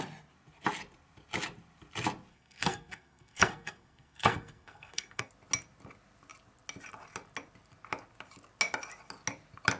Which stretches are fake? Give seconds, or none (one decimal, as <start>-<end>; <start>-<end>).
2.3-5.3